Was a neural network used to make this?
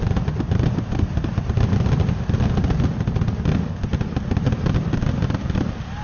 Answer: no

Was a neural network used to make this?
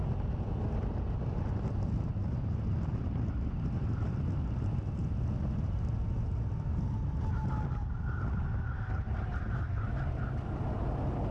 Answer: no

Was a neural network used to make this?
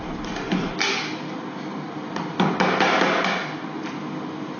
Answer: no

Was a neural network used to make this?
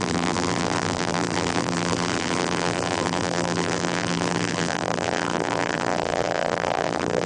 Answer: yes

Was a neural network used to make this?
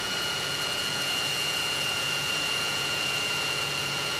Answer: yes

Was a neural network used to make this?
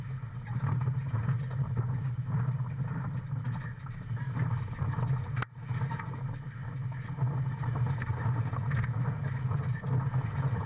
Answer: no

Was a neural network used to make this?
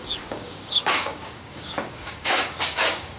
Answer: yes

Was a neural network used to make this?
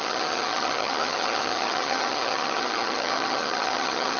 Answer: yes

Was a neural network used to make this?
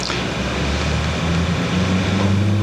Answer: no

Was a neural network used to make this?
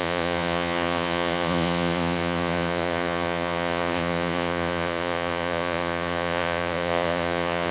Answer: yes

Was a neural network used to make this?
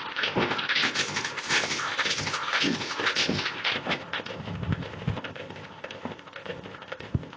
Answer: yes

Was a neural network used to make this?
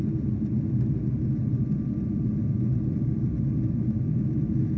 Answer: no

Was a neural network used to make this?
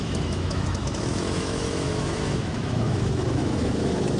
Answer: yes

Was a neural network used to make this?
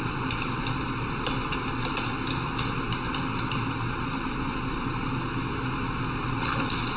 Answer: no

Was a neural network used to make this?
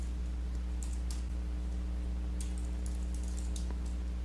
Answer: no